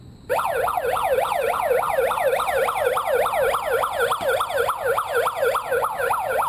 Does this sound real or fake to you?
real